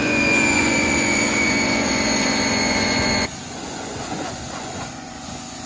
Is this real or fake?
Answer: fake